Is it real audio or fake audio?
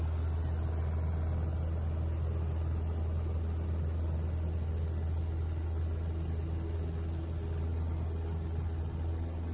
real